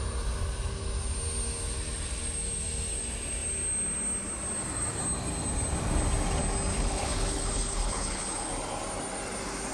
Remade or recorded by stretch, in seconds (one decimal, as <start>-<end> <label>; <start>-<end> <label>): 0.0-6.7 recorded; 6.7-8.5 remade; 8.5-9.7 recorded